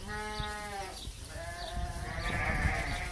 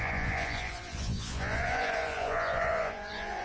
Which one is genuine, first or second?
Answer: first